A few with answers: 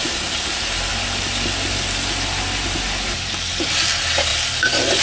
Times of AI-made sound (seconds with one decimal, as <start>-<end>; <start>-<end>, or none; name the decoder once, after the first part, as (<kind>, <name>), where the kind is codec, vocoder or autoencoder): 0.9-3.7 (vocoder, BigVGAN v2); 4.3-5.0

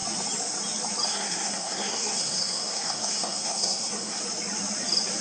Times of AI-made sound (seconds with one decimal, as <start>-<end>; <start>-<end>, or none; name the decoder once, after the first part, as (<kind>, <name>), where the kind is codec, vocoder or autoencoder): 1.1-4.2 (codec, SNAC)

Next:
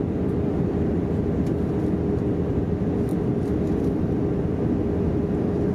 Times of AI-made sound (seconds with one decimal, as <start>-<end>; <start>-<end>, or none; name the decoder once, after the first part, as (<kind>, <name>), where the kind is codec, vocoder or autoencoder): none

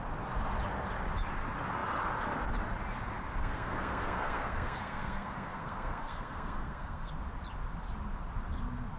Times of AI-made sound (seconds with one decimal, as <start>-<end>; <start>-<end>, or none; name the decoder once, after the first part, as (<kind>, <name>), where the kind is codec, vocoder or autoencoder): 3.4-7.1 (codec, SNAC)

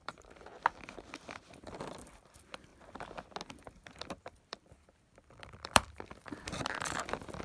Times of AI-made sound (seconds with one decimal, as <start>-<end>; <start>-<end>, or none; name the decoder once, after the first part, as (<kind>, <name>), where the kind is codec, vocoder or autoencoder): 0.0-0.5 (vocoder, BigVGAN v2); 1.6-2.7; 4.5-7.4

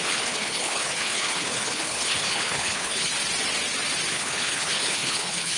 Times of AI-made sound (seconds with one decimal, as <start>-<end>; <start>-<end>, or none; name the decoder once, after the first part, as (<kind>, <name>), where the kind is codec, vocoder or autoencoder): 0.0-3.1 (codec, HILCodec); 4.1-5.6

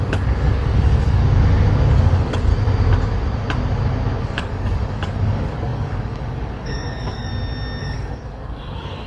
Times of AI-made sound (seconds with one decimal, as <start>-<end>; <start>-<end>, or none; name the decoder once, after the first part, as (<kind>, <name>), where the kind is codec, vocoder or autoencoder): 0.0-1.2 (codec, DAC); 1.9-2.5; 4.2-7.3; 7.8-9.1